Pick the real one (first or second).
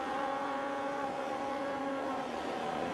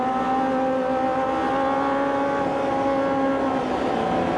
second